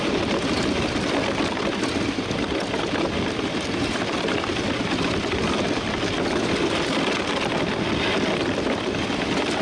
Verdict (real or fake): real